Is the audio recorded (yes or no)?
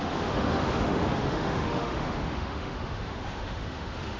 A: no